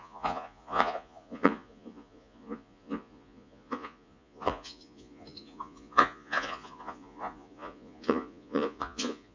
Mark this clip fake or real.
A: fake